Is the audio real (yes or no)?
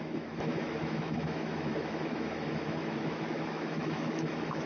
no